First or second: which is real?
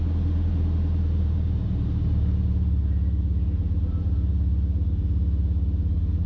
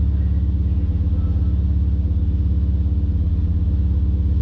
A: second